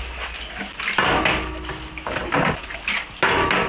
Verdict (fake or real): real